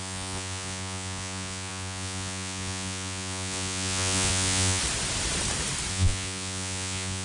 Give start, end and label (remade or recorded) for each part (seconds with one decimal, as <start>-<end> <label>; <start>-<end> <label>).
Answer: 0.0-4.8 remade; 4.8-5.9 recorded; 5.9-7.2 remade